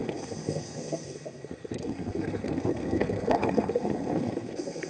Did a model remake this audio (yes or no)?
yes